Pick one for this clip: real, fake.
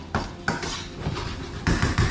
real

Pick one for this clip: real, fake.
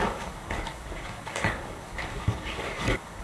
fake